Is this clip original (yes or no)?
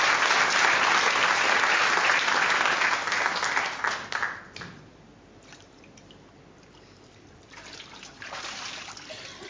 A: yes